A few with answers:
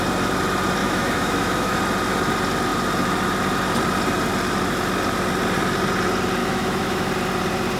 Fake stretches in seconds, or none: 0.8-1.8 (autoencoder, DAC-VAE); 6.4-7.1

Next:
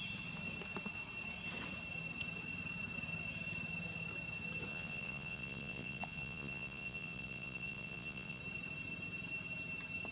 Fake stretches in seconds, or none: 4.7-8.4 (vocoder, Vocos)

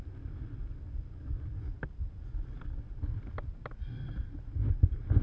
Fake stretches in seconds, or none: none

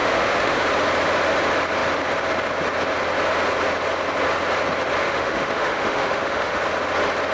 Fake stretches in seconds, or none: 0.0-0.6 (autoencoder, DAC-VAE); 5.0-6.6

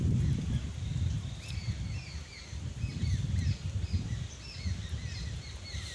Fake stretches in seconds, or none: none